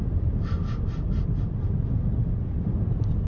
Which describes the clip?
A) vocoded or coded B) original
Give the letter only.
B